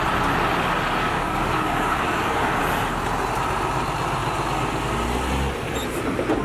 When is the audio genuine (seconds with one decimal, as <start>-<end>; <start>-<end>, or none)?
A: 0.0-1.0; 2.6-6.4